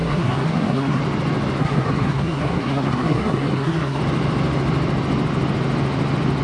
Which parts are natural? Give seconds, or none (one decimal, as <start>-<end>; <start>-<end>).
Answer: 1.0-1.6; 4.0-6.4